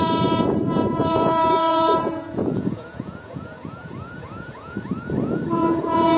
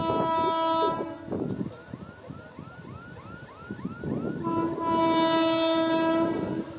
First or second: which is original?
second